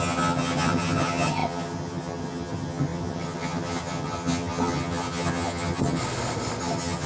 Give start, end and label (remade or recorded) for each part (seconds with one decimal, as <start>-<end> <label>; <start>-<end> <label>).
0.0-6.0 remade; 6.0-6.6 recorded; 6.6-7.1 remade